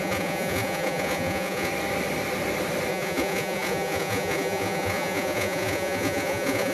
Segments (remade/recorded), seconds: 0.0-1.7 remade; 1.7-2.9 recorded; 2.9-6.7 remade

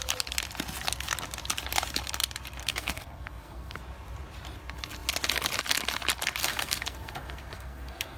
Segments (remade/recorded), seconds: 0.0-2.6 recorded; 2.6-3.8 remade; 3.8-6.4 recorded; 6.4-8.2 remade

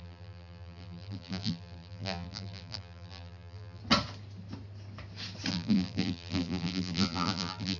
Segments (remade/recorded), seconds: 0.0-3.8 remade; 3.8-5.5 recorded; 5.5-7.8 remade